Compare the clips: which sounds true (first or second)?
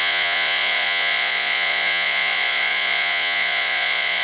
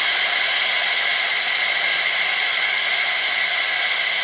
second